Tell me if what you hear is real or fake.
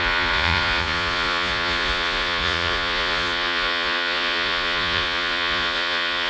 fake